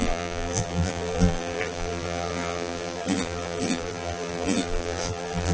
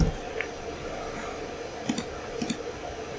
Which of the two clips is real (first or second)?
second